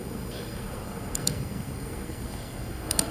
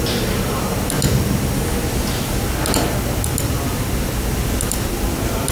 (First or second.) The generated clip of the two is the first